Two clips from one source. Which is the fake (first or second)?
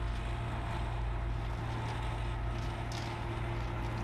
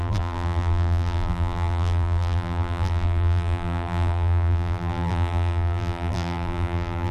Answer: second